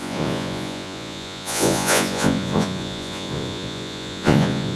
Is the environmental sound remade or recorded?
remade